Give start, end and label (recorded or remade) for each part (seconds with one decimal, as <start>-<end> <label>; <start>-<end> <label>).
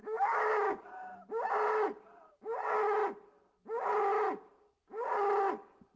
0.0-0.8 remade; 0.8-6.0 recorded